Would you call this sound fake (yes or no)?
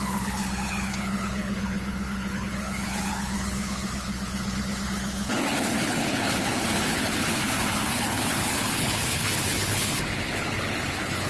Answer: yes